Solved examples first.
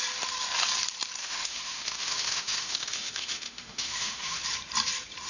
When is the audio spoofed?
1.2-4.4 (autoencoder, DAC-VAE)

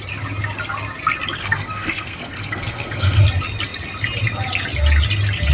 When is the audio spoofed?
1.4-3.2 (codec, SNAC)

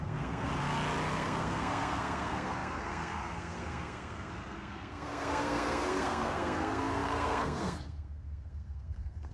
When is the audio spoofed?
0.0-0.5 (codec, SNAC); 1.1-9.3